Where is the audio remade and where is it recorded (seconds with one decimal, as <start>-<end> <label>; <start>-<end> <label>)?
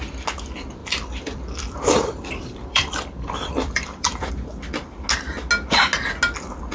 0.0-0.8 recorded; 0.8-4.3 remade; 4.3-6.7 recorded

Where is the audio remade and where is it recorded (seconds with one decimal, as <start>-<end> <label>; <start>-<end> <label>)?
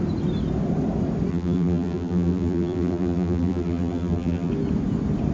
0.0-1.3 recorded; 1.3-4.5 remade; 4.5-5.3 recorded